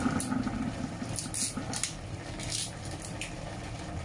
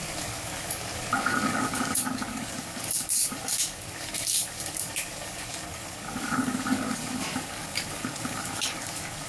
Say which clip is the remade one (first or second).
second